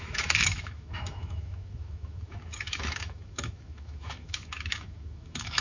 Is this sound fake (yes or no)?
yes